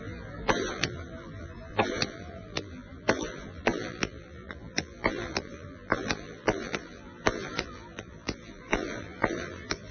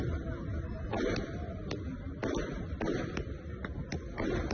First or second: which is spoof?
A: first